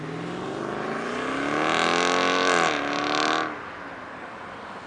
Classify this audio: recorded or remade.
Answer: recorded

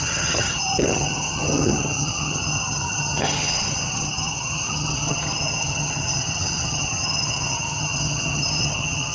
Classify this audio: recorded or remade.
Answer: remade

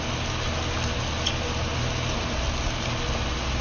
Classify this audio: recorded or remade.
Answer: recorded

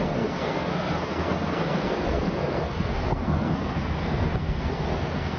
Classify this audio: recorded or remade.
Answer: remade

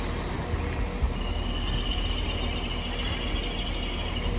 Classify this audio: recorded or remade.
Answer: recorded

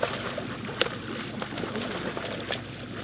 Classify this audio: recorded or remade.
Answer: recorded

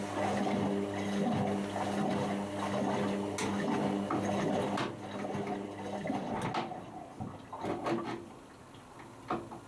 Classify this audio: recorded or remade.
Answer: recorded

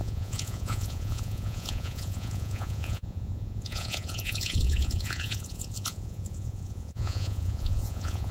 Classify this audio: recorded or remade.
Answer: remade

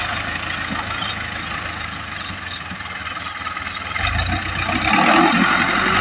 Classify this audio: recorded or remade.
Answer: recorded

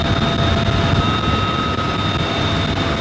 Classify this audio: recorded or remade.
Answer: recorded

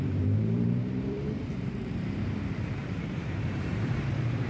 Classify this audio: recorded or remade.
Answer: remade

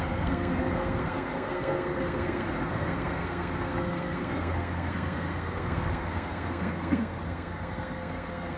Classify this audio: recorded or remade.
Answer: remade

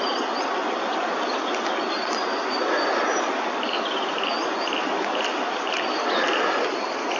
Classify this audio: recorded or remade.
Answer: recorded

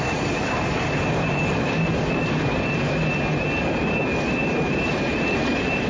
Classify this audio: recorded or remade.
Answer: remade